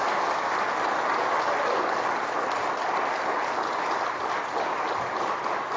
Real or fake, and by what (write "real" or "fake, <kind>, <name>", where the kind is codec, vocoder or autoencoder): real